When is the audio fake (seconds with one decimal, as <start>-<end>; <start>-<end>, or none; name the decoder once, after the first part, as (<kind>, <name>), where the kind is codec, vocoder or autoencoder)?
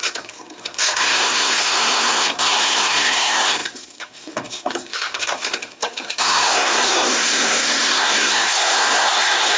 0.0-9.6 (codec, SNAC)